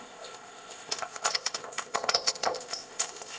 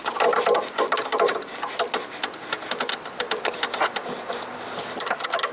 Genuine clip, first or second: second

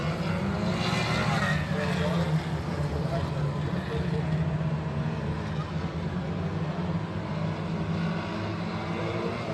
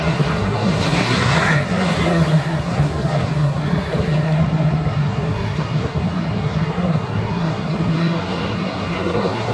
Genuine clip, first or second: first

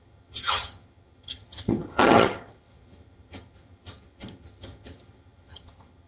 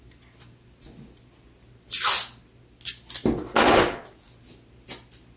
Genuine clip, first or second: second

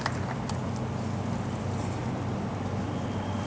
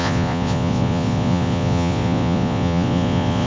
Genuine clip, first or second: first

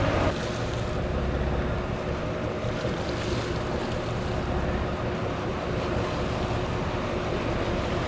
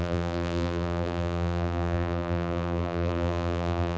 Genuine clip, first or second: first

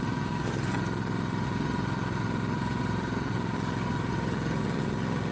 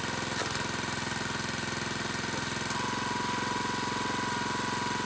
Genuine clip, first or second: second